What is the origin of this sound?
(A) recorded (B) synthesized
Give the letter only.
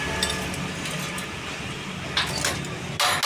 A